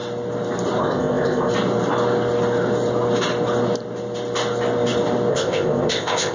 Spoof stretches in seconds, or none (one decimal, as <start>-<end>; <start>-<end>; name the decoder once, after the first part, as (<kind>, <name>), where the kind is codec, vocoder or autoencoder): 0.8-1.5 (codec, ZipCodec); 5.3-6.3